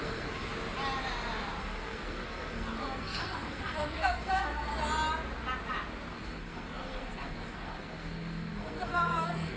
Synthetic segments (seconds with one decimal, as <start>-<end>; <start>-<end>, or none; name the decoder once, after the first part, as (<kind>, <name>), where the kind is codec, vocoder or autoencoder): 0.0-0.5 (codec, SNAC); 1.6-4.7; 6.1-9.6

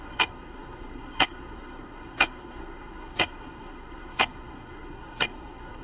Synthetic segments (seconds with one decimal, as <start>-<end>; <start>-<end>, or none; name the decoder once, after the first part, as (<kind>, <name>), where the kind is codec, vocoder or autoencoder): 0.0-5.8 (codec, SNAC)